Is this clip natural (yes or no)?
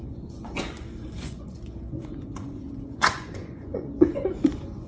no